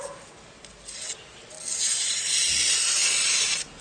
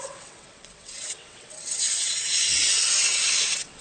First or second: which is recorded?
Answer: first